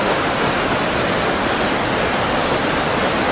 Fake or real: real